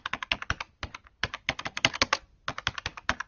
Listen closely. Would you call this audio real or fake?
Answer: real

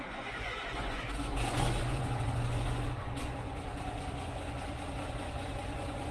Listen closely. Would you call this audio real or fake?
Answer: fake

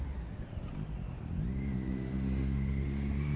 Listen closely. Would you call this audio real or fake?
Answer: real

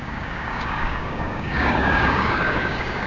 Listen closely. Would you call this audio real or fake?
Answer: fake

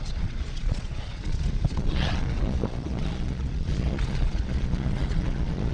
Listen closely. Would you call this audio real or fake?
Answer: fake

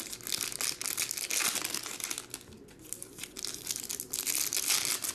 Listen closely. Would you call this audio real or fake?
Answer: real